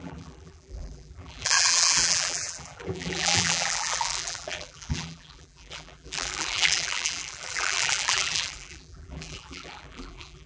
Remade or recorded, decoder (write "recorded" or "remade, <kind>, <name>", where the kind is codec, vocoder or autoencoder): remade, vocoder, BigVGAN v2